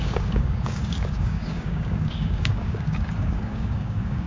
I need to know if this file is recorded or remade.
remade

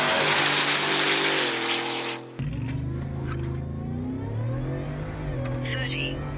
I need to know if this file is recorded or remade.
recorded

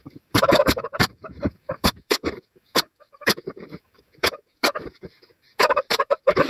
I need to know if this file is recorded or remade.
remade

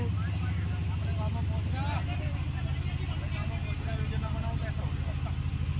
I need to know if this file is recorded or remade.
recorded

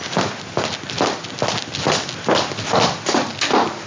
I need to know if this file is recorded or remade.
recorded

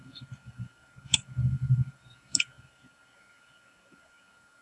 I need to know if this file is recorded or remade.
remade